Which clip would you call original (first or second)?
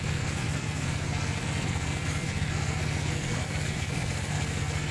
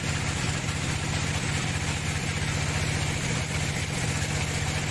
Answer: second